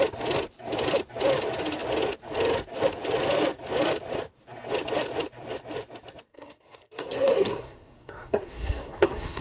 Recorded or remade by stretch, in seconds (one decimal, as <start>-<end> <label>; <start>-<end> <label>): 0.0-6.3 recorded; 6.3-9.4 remade